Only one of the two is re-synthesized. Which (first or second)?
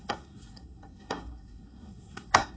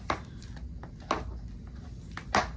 first